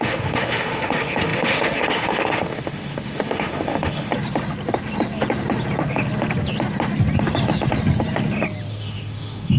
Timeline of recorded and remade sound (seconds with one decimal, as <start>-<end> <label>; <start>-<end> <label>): 0.0-4.1 remade; 4.1-8.7 recorded; 8.7-9.6 remade